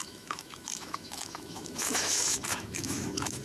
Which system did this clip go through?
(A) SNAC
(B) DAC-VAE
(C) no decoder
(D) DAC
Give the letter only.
B